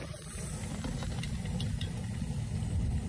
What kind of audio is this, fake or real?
real